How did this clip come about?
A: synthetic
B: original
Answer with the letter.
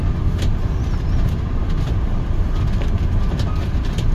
B